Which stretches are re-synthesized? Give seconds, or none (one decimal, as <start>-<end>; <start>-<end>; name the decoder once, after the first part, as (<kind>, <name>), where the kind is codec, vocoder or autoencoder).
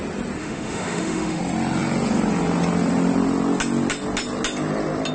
0.4-1.4 (autoencoder, DAC-VAE)